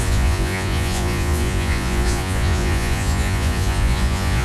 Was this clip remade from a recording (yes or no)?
yes